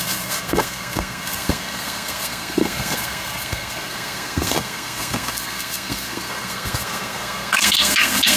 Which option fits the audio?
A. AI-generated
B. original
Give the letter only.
A